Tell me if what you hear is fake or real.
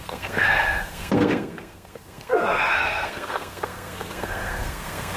fake